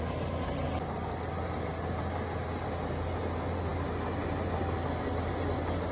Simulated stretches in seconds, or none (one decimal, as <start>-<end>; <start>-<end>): none